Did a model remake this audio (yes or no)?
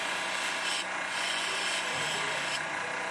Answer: yes